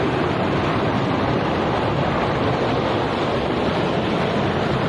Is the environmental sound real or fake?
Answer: real